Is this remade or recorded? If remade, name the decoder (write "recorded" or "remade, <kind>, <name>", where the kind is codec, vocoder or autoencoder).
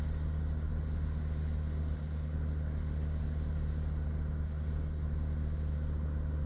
recorded